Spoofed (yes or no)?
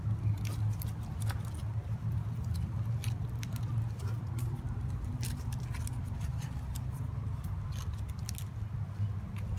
no